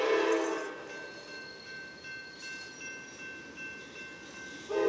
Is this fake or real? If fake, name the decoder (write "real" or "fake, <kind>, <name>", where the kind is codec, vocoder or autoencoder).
real